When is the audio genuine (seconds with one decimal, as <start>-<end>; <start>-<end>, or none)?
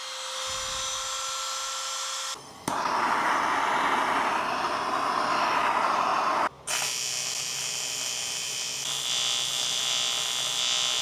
0.0-11.0